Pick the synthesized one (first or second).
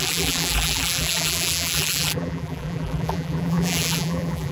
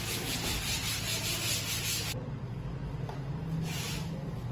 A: first